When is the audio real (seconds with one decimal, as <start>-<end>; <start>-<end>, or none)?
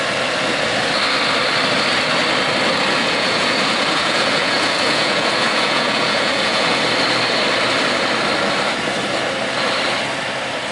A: 0.0-3.0; 6.8-10.7